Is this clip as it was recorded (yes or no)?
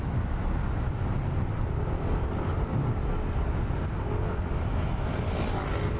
yes